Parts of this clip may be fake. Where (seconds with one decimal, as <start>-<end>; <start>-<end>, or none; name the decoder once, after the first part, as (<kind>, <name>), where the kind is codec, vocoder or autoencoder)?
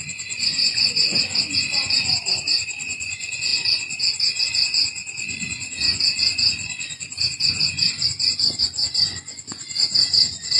0.0-10.6 (vocoder, Vocos)